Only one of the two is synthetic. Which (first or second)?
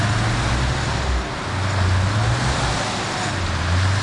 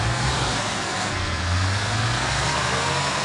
second